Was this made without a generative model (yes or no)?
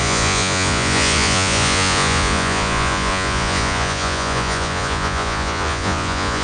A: no